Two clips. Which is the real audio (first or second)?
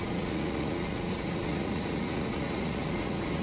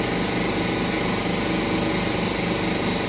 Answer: second